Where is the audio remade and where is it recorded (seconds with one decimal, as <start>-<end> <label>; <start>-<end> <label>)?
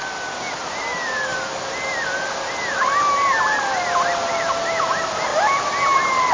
0.0-6.3 recorded